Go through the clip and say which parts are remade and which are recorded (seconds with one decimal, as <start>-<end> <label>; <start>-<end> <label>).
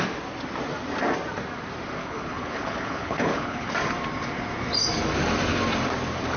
0.0-2.0 recorded; 2.0-3.7 remade; 3.7-6.4 recorded